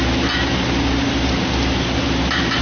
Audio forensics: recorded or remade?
recorded